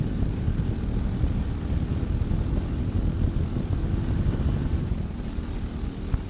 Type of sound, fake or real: real